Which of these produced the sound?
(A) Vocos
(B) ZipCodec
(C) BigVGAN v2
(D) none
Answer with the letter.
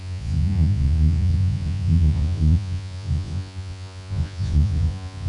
A